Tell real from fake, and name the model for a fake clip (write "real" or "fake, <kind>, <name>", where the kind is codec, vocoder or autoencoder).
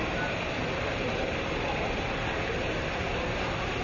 real